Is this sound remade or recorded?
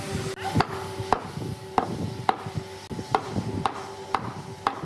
recorded